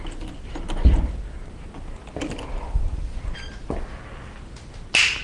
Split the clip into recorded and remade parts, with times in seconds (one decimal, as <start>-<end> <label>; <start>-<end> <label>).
0.0-5.2 recorded